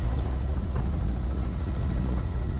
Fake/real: fake